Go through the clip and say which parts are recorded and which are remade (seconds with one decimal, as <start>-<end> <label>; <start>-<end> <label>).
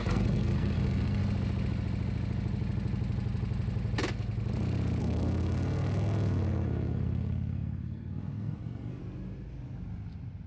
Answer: 0.0-1.2 remade; 1.2-5.0 recorded; 5.0-9.0 remade; 9.0-10.5 recorded